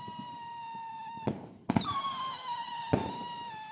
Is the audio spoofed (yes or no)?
no